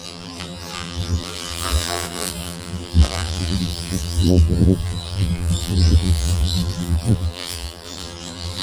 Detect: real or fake fake